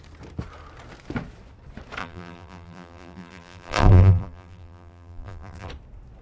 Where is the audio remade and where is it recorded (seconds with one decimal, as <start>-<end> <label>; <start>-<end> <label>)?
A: 0.0-2.0 recorded; 2.0-5.7 remade; 5.7-6.2 recorded